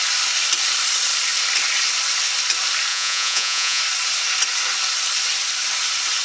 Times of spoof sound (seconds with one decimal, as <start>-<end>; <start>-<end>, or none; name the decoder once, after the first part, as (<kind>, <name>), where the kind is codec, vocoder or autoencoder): 2.9-3.8 (vocoder, Vocos)

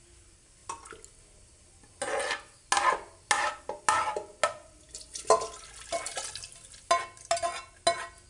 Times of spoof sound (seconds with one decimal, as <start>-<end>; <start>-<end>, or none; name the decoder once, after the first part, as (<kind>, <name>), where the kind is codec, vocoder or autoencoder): none

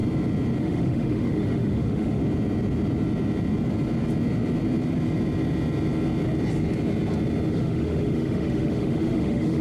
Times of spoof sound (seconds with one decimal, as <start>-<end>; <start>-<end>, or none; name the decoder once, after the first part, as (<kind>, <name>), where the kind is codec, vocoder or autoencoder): 0.6-2.2 (autoencoder, DAC-VAE); 7.5-9.6

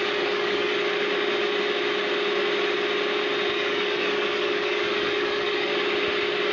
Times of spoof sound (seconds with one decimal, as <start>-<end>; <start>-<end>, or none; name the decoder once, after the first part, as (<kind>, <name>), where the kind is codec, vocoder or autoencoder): 0.0-0.7 (codec, DAC); 3.5-5.7